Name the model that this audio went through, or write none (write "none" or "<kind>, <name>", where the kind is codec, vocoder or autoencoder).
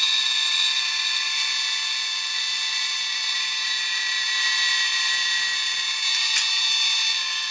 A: none